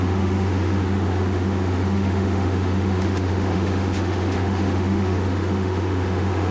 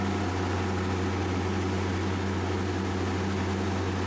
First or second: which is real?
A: second